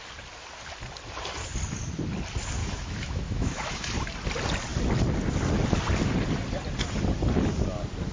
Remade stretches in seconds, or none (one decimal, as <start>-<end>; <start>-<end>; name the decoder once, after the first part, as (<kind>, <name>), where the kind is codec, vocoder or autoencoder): 2.6-3.9 (autoencoder, DAC-VAE)